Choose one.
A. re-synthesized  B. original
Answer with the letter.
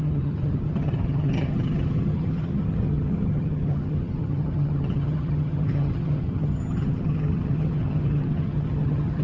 A